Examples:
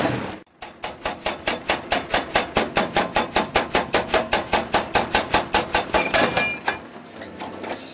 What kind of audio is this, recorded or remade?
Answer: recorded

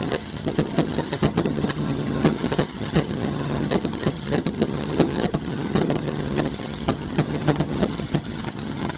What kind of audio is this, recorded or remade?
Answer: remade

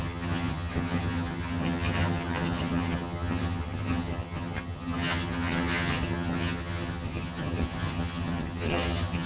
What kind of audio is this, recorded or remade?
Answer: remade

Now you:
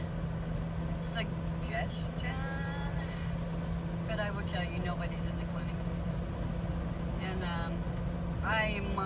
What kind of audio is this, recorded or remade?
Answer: recorded